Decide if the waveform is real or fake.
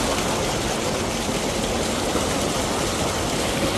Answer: real